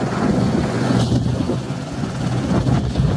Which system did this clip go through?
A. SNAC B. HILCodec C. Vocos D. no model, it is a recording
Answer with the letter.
C